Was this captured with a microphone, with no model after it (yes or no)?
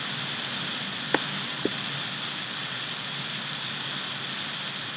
yes